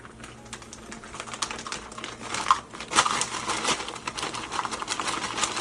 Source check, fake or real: real